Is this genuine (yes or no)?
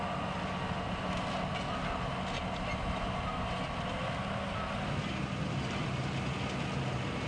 yes